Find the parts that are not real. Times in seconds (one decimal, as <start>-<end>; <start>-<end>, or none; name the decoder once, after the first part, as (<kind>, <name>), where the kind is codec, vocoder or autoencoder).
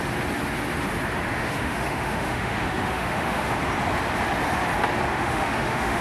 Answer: 1.3-3.6 (autoencoder, DAC-VAE); 5.1-6.0